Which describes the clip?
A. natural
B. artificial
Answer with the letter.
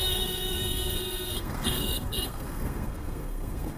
B